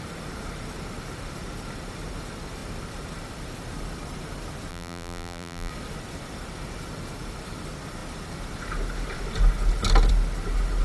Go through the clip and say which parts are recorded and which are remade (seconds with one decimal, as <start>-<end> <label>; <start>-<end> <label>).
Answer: 0.0-4.7 recorded; 4.7-5.7 remade; 5.7-10.8 recorded